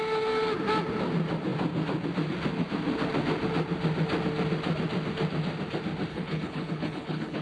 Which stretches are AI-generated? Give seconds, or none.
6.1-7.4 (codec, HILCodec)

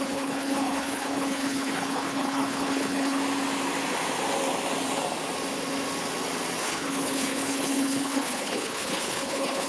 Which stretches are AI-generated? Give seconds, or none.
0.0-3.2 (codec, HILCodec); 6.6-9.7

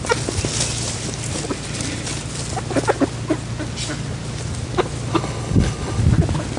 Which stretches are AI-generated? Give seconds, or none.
5.1-6.0 (codec, HILCodec)

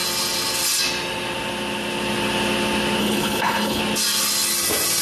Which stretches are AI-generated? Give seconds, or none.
3.0-3.8 (codec, HILCodec)

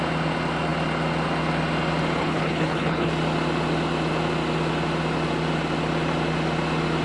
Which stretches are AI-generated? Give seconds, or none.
2.2-3.1 (codec, HILCodec)

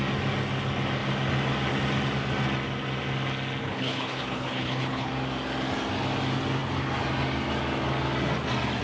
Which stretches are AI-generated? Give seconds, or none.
3.6-5.1 (codec, HILCodec)

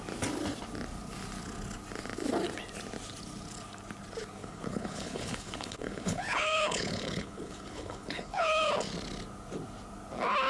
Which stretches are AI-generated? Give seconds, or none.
4.4-8.7 (codec, HILCodec)

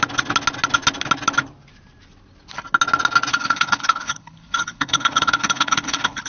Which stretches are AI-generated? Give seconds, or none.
3.3-6.3 (codec, HILCodec)